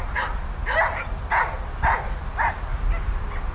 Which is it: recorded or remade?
recorded